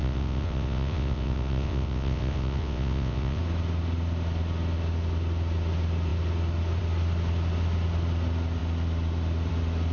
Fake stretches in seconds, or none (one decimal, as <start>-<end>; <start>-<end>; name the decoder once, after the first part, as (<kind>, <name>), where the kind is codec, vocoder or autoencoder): 0.0-3.4 (vocoder, WaveNeXt)